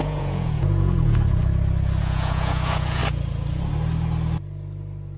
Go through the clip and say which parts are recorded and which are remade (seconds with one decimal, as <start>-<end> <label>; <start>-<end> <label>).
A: 0.0-1.4 remade; 1.4-2.0 recorded; 2.0-3.0 remade; 3.0-5.2 recorded